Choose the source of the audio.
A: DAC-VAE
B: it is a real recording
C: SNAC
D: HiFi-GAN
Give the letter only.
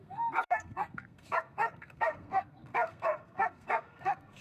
C